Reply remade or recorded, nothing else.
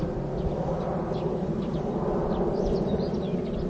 recorded